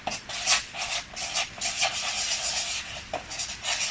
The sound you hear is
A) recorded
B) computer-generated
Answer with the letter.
B